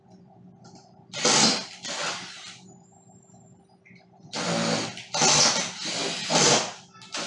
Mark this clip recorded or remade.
recorded